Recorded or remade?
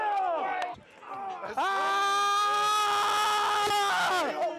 recorded